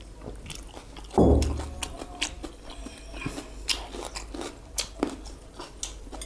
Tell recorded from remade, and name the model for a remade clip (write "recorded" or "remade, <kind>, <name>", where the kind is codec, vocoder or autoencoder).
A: recorded